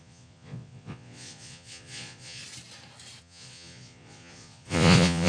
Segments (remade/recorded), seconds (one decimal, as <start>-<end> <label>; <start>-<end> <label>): 0.0-2.4 remade; 2.4-3.2 recorded; 3.2-5.3 remade